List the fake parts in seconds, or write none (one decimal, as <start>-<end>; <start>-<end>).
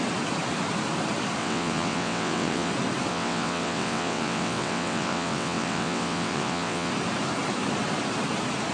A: 1.4-2.7; 3.1-6.9